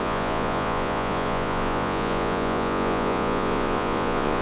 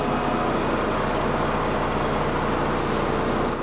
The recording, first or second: second